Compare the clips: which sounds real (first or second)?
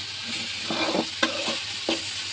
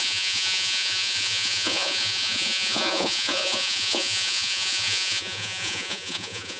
first